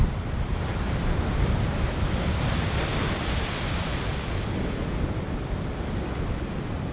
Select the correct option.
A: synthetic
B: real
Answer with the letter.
A